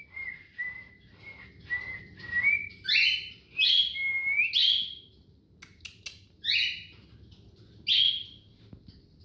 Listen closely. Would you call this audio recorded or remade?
recorded